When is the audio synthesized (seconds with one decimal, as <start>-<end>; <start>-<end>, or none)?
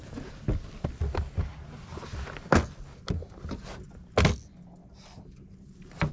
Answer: none